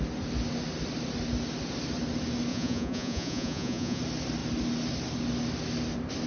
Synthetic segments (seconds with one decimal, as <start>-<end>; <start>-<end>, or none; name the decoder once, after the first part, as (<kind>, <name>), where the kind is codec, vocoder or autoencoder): 2.5-4.0 (vocoder, Vocos)